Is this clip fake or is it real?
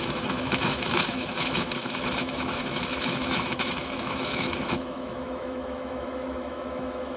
fake